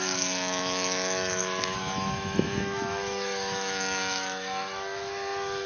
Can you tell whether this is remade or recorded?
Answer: remade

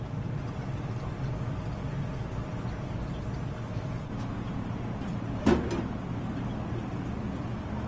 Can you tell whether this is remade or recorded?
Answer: recorded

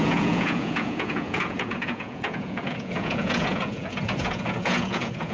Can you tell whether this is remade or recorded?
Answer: remade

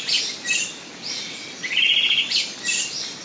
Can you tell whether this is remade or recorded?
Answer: recorded